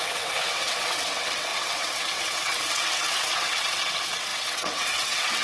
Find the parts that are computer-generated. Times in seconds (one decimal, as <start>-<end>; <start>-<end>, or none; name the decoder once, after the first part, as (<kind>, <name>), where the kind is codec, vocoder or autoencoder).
0.0-5.4 (vocoder, WaveNeXt)